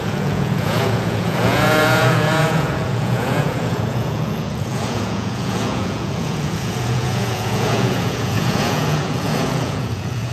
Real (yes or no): no